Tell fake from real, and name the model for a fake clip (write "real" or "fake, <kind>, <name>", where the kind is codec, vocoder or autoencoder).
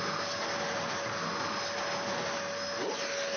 real